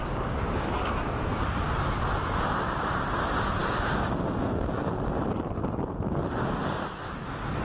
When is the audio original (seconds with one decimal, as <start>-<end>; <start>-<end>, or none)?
1.1-3.6; 4.8-7.6

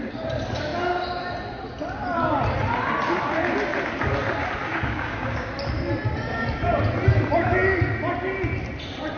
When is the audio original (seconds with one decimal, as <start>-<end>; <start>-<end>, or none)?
0.0-4.6; 5.5-9.2

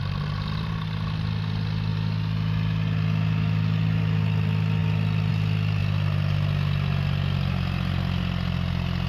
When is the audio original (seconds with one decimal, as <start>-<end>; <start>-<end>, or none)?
0.0-9.1

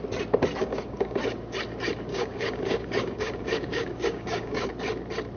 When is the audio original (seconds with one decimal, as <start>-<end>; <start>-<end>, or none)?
0.0-0.6; 1.2-2.1; 4.7-5.4

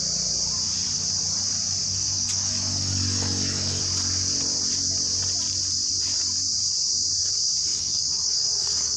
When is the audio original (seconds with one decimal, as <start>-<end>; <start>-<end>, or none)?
0.0-1.8; 3.8-7.7

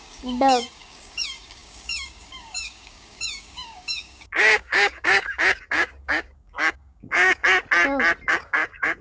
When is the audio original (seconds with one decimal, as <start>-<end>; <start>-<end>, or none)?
7.4-8.3